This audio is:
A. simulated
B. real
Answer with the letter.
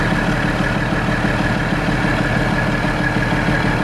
B